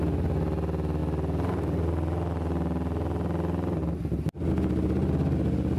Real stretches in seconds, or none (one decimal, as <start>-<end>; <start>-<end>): 0.0-5.8